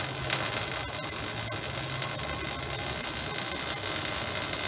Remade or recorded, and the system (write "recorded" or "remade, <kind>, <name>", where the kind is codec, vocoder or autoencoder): recorded